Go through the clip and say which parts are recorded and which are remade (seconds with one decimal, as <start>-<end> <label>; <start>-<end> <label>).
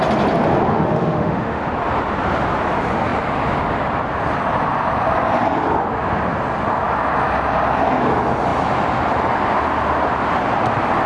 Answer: 0.0-0.7 recorded; 0.7-1.6 remade; 1.6-11.1 recorded